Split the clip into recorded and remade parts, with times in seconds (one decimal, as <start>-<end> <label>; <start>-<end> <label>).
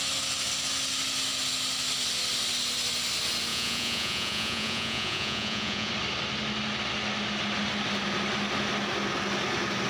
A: 0.0-3.5 recorded; 3.5-5.9 remade; 5.9-9.9 recorded